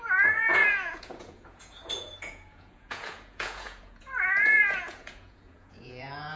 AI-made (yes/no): yes